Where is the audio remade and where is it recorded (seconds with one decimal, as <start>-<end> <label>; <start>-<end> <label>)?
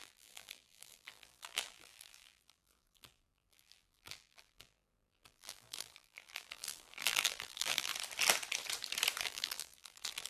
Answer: 0.0-7.9 remade; 7.9-9.2 recorded; 9.2-10.3 remade